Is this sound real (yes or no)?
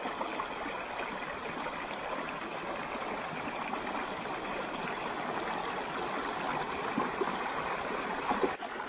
yes